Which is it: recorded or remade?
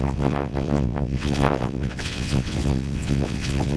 remade